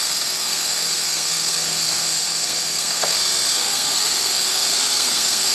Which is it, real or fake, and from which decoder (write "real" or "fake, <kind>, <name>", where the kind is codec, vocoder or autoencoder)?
fake, codec, SNAC